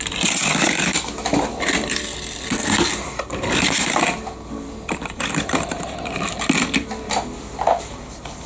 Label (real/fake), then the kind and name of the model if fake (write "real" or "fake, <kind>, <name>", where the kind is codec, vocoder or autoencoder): fake, vocoder, BigVGAN v2